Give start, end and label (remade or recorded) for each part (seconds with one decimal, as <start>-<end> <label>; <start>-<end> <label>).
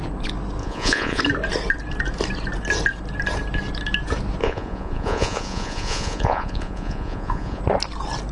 0.0-0.6 recorded; 0.6-1.2 remade; 1.2-4.4 recorded; 4.4-7.6 remade; 7.6-8.3 recorded